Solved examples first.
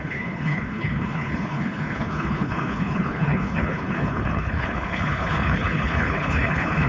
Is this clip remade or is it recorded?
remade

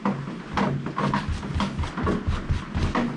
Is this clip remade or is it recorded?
recorded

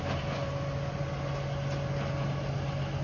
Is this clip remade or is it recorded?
recorded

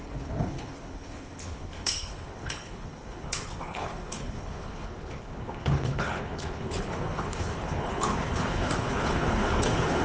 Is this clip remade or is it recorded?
remade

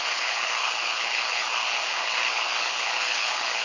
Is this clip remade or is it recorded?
remade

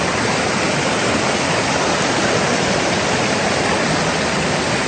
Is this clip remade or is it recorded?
recorded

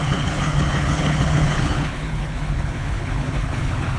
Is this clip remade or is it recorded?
remade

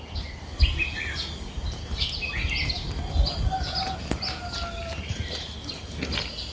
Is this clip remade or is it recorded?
recorded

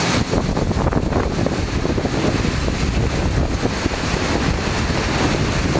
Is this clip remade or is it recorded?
recorded